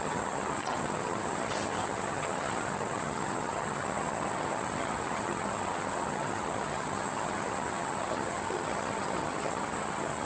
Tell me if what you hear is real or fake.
fake